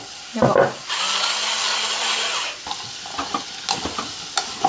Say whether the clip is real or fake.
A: real